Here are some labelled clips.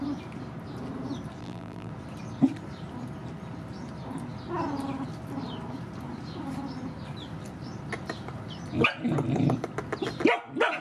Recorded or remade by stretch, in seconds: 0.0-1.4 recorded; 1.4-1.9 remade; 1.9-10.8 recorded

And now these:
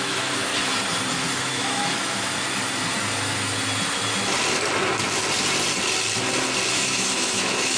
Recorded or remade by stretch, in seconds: 0.0-0.5 remade; 0.5-1.1 recorded; 1.1-2.3 remade; 2.3-6.7 recorded; 6.7-7.8 remade

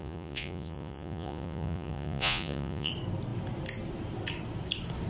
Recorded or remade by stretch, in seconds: 0.0-2.9 remade; 2.9-5.1 recorded

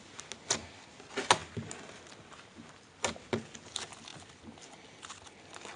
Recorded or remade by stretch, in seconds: 0.0-5.8 recorded

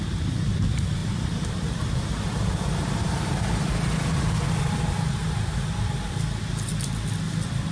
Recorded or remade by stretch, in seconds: 0.0-1.0 recorded; 1.0-3.6 remade; 3.6-7.7 recorded

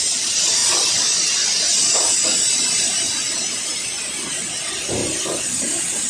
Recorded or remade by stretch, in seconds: 0.0-6.1 recorded